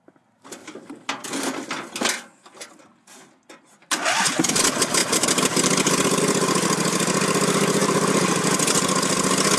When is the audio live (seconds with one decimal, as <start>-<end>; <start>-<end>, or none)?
0.0-0.6; 1.4-5.0; 6.2-7.8; 8.5-9.6